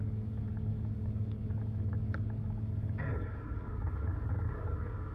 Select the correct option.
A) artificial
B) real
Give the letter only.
A